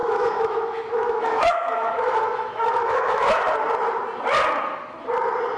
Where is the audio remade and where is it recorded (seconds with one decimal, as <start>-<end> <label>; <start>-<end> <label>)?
0.0-3.4 remade; 3.4-5.6 recorded